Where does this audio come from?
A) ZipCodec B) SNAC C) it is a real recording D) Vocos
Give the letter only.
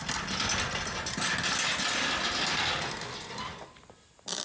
C